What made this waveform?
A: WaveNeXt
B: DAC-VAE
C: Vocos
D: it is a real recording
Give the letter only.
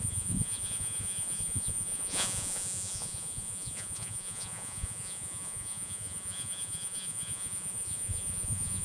C